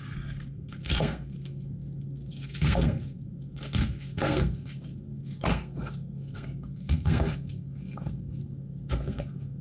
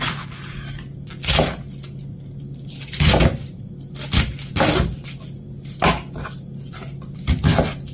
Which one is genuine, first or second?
second